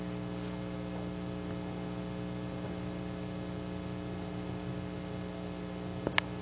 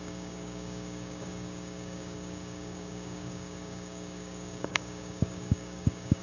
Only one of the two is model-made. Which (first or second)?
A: second